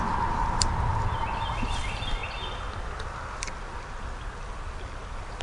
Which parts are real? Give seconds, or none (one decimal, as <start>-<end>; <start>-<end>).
0.0-5.4